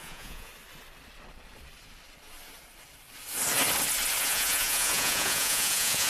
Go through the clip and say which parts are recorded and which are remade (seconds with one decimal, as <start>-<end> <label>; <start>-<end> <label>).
0.0-0.5 remade; 0.5-4.2 recorded; 4.2-6.1 remade